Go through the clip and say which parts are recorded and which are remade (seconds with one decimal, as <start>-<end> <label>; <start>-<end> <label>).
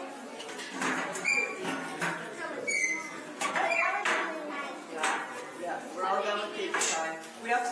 0.0-7.7 recorded